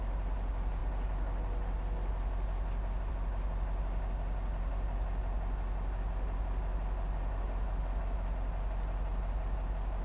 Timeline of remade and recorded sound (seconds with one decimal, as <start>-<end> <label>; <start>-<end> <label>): 0.0-10.0 recorded

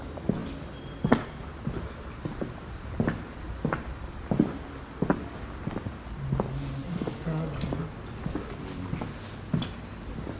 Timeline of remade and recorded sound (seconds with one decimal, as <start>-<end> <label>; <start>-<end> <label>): 0.0-6.8 recorded; 6.8-7.8 remade; 7.8-10.4 recorded

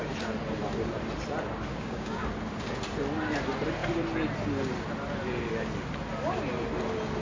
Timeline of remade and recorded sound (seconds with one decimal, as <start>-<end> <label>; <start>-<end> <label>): 0.0-1.7 recorded; 1.7-2.2 remade; 2.2-7.2 recorded

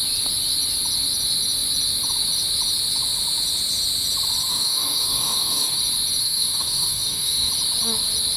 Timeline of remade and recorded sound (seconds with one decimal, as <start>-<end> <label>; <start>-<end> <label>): 0.0-4.5 recorded; 4.5-5.8 remade; 5.8-6.2 recorded; 6.2-7.5 remade; 7.5-8.4 recorded

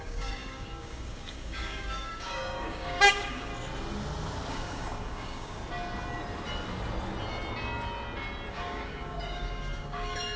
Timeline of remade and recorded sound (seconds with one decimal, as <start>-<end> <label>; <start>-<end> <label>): 0.0-3.5 remade; 3.5-4.5 recorded; 4.5-5.6 remade; 5.6-8.5 recorded; 8.5-10.4 remade

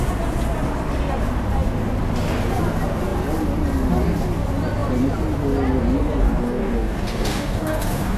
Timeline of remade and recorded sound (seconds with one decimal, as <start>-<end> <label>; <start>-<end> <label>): 0.0-6.2 recorded; 6.2-8.2 remade